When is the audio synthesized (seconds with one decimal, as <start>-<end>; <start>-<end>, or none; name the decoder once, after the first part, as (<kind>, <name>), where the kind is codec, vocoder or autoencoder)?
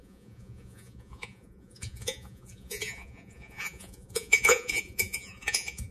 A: 0.0-5.9 (vocoder, Vocos)